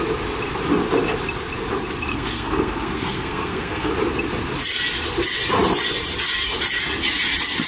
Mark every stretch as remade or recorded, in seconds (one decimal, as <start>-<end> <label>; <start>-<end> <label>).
0.0-2.1 recorded; 2.1-3.9 remade; 3.9-7.7 recorded